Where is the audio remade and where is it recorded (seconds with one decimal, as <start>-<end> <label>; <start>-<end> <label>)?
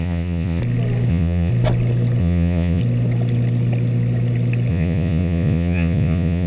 0.0-0.6 remade; 0.6-1.1 recorded; 1.1-1.5 remade; 1.5-2.2 recorded; 2.2-2.8 remade; 2.8-4.7 recorded; 4.7-6.5 remade